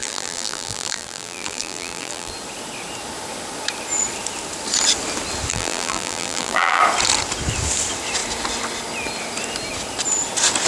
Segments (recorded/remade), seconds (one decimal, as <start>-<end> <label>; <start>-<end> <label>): 0.0-2.3 remade; 2.3-5.5 recorded; 5.5-6.8 remade; 6.8-10.7 recorded